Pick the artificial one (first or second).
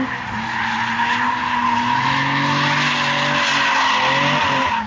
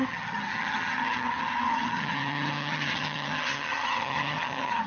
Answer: second